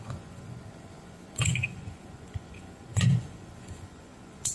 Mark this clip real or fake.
fake